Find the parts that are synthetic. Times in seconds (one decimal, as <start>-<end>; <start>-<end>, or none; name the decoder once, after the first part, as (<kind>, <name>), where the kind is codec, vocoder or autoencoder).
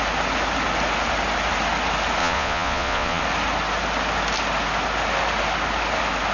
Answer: 2.2-3.2 (vocoder, Vocos)